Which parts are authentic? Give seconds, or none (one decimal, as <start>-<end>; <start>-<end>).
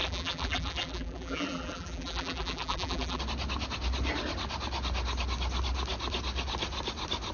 3.2-7.3